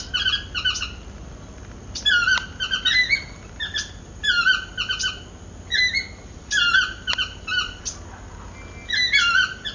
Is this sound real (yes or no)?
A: yes